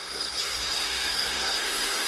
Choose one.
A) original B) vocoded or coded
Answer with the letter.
B